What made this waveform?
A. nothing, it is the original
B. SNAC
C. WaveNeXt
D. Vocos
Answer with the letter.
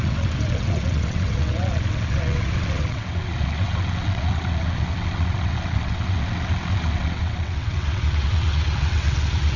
C